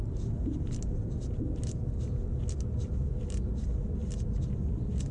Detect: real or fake real